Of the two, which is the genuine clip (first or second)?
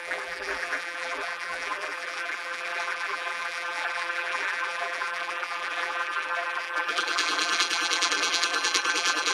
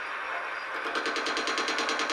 second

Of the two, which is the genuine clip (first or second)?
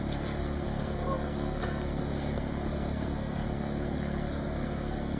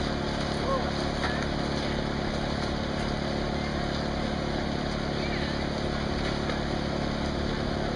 second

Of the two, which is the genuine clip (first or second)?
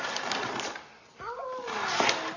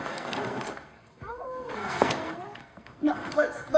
first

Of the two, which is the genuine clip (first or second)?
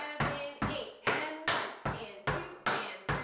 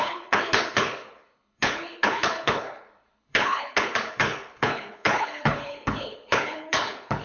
first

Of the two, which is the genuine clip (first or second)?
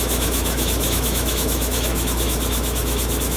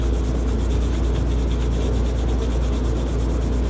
second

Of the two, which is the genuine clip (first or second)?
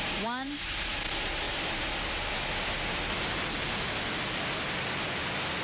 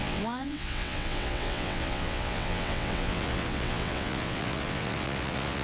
first